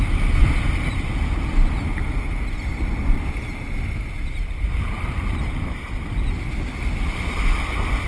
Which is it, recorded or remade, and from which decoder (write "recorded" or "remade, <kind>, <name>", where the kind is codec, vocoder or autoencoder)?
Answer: recorded